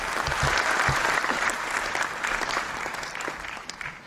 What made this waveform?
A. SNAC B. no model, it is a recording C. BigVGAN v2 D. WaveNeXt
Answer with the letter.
B